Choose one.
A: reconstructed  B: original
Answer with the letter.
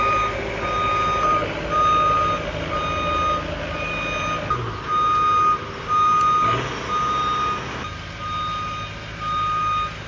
B